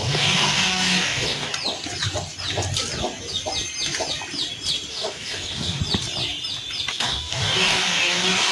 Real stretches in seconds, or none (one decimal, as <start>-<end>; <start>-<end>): 1.5-4.9; 5.8-6.9